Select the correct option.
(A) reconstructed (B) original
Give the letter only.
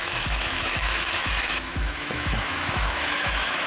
A